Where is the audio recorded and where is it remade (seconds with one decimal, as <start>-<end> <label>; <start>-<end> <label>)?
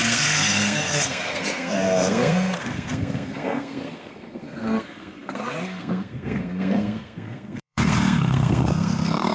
0.0-9.3 remade